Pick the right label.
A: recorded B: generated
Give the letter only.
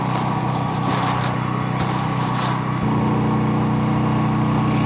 A